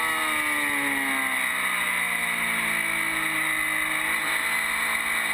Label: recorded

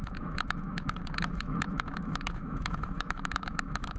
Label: remade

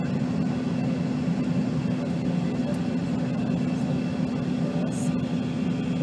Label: recorded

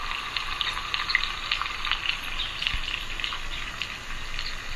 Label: recorded